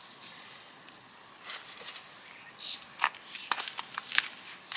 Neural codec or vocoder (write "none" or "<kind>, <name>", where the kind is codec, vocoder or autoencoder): none